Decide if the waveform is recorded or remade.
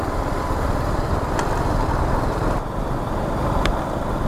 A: recorded